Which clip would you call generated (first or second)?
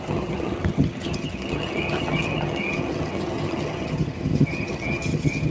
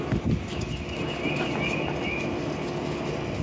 first